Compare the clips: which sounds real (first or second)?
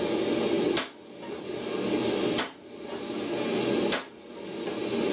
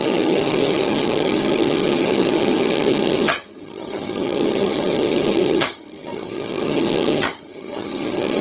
first